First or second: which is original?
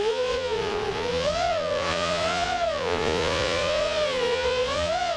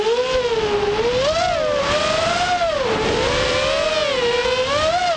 second